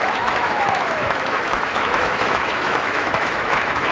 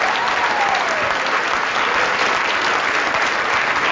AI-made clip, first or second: first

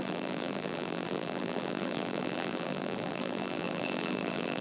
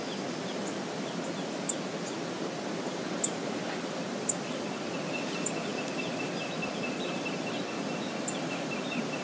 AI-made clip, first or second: first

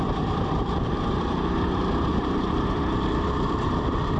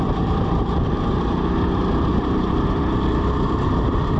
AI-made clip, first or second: first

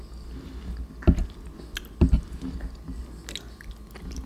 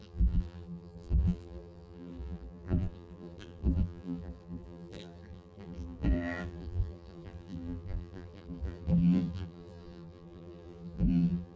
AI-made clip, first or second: second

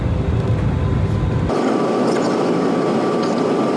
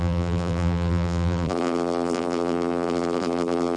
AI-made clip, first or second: second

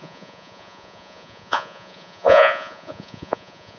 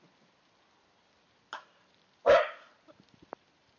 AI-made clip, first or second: first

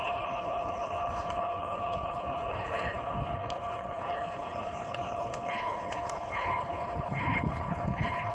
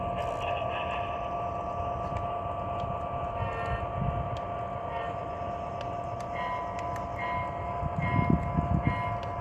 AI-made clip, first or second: first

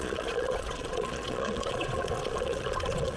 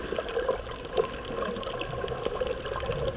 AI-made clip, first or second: first